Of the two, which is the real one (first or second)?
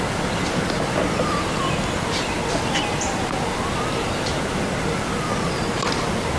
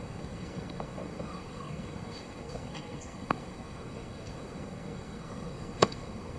first